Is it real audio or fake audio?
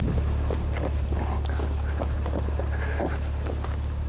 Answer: real